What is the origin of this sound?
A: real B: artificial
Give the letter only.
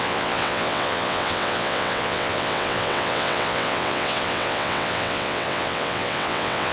B